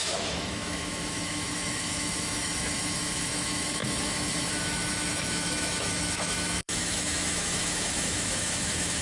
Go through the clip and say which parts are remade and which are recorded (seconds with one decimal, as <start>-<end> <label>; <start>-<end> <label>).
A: 0.0-9.0 remade